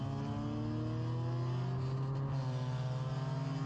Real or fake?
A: real